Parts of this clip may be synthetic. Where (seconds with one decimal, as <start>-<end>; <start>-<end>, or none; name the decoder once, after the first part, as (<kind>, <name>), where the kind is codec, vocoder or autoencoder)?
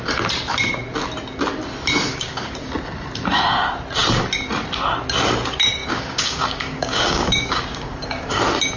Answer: 2.1-2.7 (codec, DAC); 5.8-8.4